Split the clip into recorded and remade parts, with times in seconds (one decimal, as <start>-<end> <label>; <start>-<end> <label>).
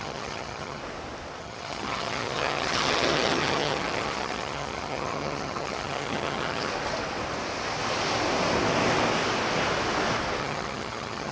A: 0.0-0.8 remade; 0.8-1.4 recorded; 1.4-6.7 remade; 6.7-10.4 recorded; 10.4-11.3 remade